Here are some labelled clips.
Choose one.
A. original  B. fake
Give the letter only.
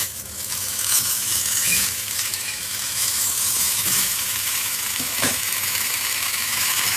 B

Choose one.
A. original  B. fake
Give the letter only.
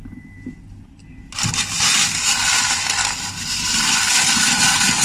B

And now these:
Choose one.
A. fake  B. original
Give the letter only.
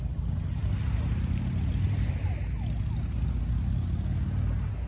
B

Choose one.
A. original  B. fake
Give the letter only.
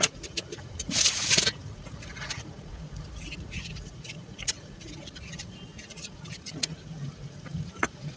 B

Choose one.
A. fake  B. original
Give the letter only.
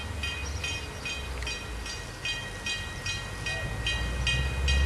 B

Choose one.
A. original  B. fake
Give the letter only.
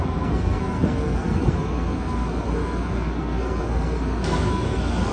B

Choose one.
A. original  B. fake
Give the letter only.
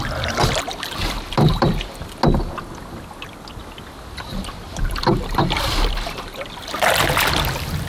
A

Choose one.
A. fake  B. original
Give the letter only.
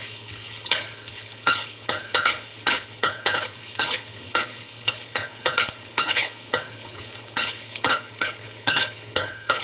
A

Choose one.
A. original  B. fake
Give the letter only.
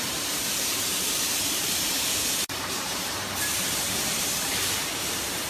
B